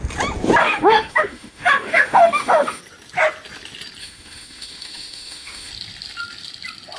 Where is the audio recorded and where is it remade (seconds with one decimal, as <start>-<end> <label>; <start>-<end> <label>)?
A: 0.0-0.6 recorded; 0.6-2.8 remade; 2.8-4.0 recorded; 4.0-5.7 remade; 5.7-7.0 recorded